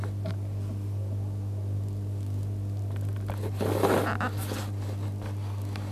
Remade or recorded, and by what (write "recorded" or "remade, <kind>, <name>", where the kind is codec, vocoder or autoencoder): recorded